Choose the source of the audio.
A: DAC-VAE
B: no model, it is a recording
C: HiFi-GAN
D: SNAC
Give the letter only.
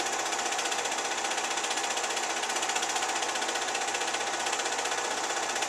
B